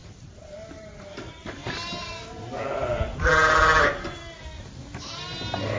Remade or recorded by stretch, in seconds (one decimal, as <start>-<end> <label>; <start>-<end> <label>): 0.0-5.8 recorded